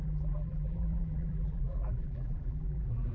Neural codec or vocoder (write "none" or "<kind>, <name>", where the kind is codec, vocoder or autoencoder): vocoder, BigVGAN v2